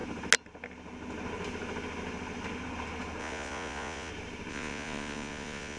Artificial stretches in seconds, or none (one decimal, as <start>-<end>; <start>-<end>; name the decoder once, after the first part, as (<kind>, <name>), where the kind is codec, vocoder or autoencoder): 3.2-4.1 (vocoder, Vocos); 4.5-5.8